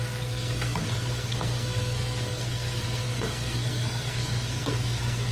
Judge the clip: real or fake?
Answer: fake